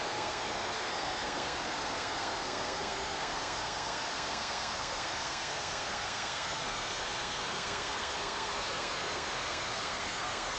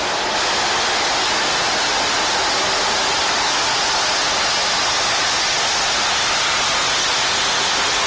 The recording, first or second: second